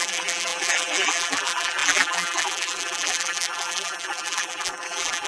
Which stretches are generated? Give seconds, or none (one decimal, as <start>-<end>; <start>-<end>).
0.0-5.3